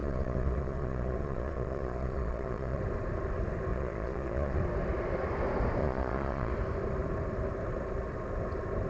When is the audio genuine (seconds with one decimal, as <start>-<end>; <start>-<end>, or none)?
2.8-3.7; 4.6-5.8; 6.5-8.9